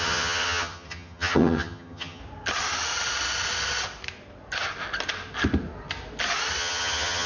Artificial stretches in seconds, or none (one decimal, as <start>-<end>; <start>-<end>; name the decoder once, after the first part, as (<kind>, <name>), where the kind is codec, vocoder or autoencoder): 0.0-2.2 (vocoder, HiFi-GAN); 6.6-7.3